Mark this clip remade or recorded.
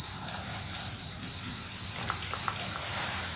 recorded